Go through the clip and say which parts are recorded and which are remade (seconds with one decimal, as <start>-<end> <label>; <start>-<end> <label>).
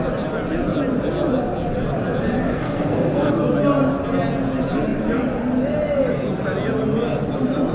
0.0-2.5 recorded; 2.5-3.3 remade; 3.3-7.7 recorded